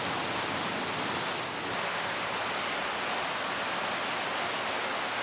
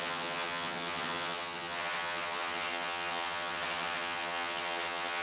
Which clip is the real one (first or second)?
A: first